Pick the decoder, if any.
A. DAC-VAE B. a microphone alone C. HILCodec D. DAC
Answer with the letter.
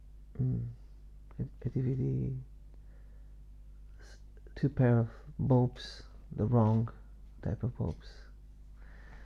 B